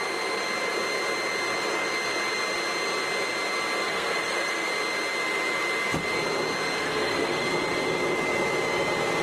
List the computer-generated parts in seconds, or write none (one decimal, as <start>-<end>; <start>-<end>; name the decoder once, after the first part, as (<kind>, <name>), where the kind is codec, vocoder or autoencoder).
3.8-4.7 (codec, SNAC); 6.8-7.4